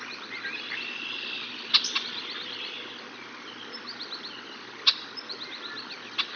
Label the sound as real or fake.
real